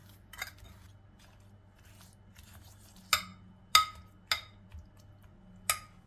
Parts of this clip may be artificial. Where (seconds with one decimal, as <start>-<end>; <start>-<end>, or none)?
none